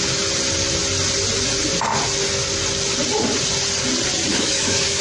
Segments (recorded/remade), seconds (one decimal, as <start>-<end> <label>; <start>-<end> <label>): 0.0-4.3 recorded; 4.3-5.0 remade